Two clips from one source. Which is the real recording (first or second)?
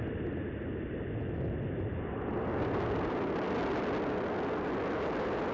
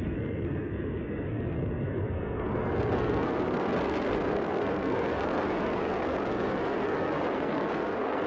first